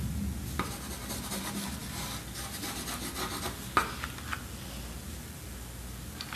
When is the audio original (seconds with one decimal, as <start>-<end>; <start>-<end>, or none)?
0.0-6.4